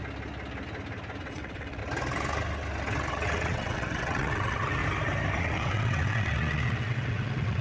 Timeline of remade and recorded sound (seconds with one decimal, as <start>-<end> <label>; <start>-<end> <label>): 0.0-1.2 recorded; 1.2-1.8 remade; 1.8-3.1 recorded; 3.1-4.8 remade; 4.8-5.4 recorded; 5.4-7.6 remade